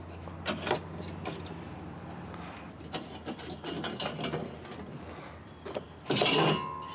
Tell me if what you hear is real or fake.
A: real